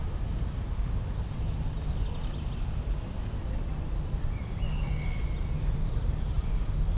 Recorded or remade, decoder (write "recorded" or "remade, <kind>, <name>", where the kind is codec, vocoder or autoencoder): recorded